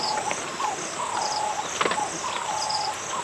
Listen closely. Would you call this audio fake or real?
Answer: real